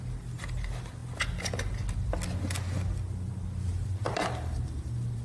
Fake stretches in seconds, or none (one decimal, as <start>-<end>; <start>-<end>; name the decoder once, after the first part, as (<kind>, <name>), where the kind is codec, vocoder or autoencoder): 3.7-5.2 (vocoder, BigVGAN v2)